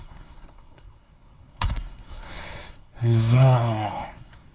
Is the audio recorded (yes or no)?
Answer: no